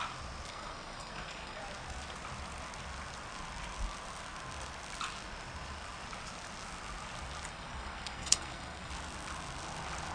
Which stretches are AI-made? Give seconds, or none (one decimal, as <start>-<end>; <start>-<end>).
0.5-1.6; 7.5-8.9